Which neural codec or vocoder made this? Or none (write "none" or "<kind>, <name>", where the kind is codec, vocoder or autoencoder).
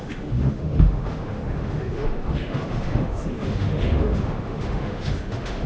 autoencoder, DAC-VAE